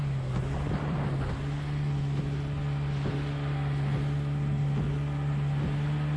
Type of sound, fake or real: real